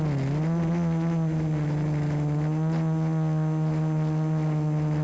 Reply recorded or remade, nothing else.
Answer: recorded